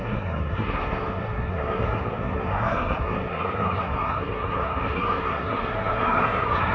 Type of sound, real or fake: fake